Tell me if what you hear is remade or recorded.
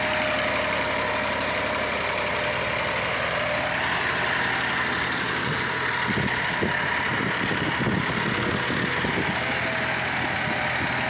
recorded